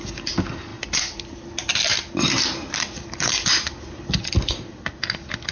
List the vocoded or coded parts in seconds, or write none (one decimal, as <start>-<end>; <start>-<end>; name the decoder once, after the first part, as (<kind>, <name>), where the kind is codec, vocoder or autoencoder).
none